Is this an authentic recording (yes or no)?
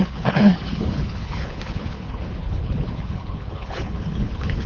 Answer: no